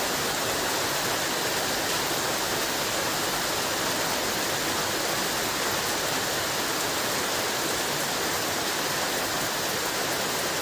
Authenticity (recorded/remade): recorded